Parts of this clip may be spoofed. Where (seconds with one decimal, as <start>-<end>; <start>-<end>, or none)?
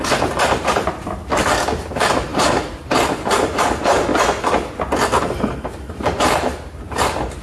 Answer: 0.0-1.2; 1.9-4.1; 5.2-7.4